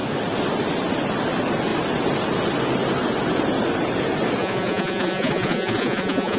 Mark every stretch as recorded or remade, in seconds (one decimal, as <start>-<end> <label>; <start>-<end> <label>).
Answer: 0.0-4.4 recorded; 4.4-6.4 remade